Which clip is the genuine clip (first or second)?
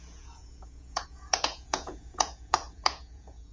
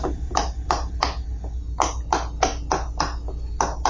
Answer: second